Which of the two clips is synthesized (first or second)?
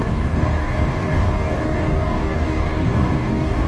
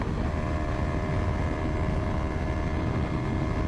first